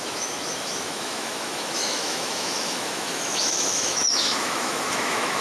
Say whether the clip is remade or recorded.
remade